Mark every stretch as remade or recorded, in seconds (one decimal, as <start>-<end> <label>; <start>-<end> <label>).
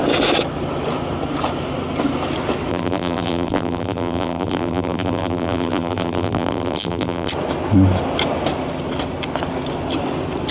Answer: 0.0-2.7 recorded; 2.7-7.3 remade; 7.3-10.5 recorded